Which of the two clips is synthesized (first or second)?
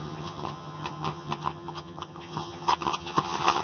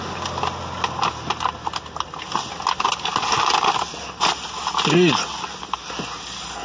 first